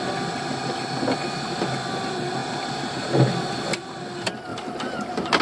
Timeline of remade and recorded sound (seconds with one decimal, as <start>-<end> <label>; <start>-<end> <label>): 0.0-2.4 recorded; 2.4-3.0 remade; 3.0-4.5 recorded; 4.5-5.4 remade